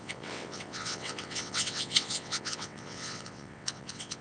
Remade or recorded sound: remade